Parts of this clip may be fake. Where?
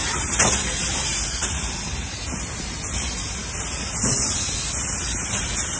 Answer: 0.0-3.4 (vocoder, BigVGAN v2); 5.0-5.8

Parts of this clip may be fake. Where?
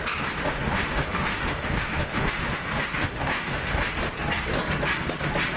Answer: 0.5-3.9 (autoencoder, DAC-VAE)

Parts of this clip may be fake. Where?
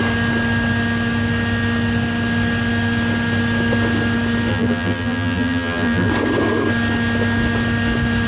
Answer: 4.5-6.1 (vocoder, BigVGAN v2)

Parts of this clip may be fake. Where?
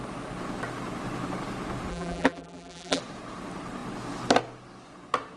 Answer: 1.9-3.0 (vocoder, BigVGAN v2)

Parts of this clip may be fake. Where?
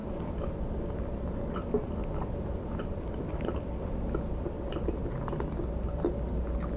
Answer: none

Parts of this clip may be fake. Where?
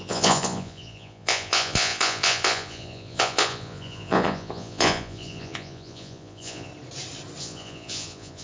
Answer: 0.0-6.7 (vocoder, Vocos); 7.4-8.4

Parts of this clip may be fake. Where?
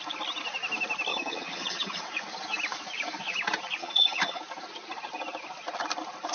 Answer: 1.1-2.0 (vocoder, HiFi-GAN); 3.8-4.4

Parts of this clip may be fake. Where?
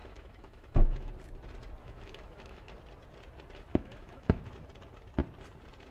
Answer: 0.0-1.1 (autoencoder, DAC-VAE); 1.8-2.7; 3.7-4.4